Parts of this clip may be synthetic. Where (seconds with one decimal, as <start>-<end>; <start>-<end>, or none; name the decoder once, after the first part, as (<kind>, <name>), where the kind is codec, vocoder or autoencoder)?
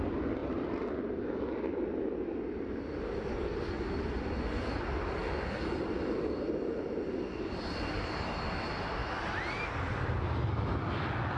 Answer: none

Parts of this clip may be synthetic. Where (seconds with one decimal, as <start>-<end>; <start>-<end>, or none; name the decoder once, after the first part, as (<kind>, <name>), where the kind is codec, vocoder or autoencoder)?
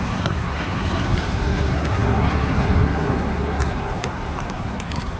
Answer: 0.0-5.2 (codec, SNAC)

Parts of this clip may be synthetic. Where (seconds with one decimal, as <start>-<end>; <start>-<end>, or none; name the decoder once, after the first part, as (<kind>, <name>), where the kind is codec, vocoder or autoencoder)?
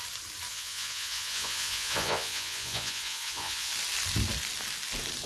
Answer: 0.5-3.7 (vocoder, Vocos)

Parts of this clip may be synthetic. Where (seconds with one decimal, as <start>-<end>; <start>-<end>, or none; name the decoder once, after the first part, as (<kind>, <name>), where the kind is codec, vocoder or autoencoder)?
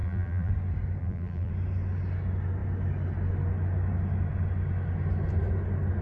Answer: 0.0-0.5 (vocoder, BigVGAN v2); 1.0-1.5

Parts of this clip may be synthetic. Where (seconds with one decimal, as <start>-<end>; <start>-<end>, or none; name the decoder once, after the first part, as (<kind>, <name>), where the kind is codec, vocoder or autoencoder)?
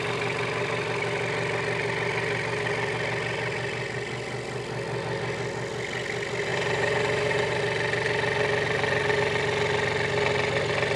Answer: 6.5-7.6 (vocoder, BigVGAN v2)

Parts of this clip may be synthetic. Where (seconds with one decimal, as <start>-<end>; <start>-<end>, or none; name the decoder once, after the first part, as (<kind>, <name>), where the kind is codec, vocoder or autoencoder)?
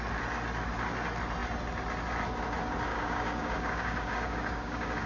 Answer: 2.9-5.1 (codec, DAC)